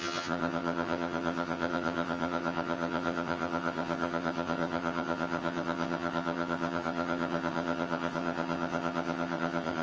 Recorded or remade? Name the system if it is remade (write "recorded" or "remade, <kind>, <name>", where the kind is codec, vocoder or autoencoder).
remade, vocoder, HiFi-GAN